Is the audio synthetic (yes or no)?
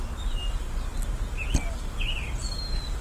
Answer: no